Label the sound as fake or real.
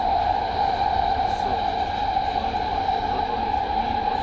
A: real